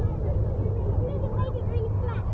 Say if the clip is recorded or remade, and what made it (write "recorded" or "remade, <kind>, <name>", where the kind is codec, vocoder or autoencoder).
recorded